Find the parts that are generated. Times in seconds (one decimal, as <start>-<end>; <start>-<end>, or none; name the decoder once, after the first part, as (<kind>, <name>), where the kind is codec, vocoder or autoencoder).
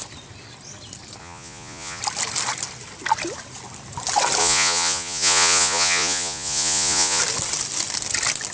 1.2-2.0 (vocoder, Vocos); 4.4-7.2